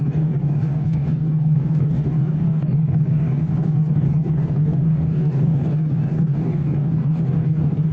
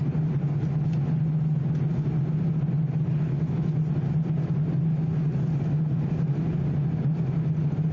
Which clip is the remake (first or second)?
first